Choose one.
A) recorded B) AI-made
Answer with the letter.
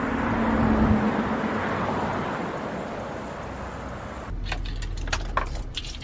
A